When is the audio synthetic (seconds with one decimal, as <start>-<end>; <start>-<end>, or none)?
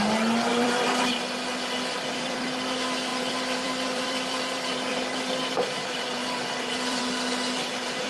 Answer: 0.5-1.3; 3.1-7.0